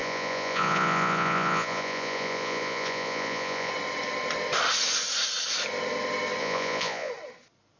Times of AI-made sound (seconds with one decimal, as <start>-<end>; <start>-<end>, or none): 0.0-3.7; 6.4-7.1